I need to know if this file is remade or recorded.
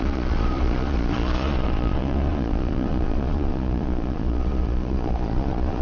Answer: remade